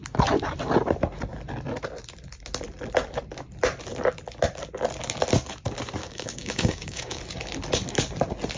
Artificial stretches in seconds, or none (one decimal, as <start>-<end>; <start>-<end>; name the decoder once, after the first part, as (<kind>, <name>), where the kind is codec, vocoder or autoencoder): 6.0-7.2 (codec, DAC)

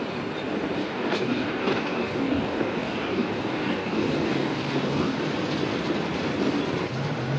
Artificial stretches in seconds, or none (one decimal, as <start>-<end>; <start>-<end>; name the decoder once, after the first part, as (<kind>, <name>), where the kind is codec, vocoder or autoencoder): 0.8-5.2 (codec, DAC)

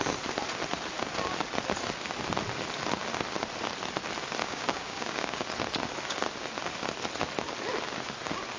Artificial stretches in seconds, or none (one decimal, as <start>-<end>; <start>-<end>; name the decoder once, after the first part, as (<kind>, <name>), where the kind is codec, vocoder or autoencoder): 4.4-5.4 (codec, DAC)